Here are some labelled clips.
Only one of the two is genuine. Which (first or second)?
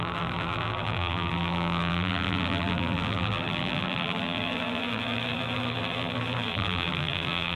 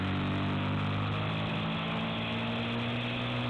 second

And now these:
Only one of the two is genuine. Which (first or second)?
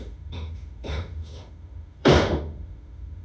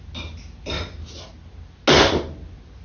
second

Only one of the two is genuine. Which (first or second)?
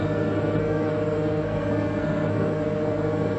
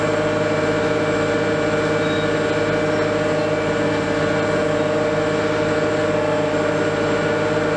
second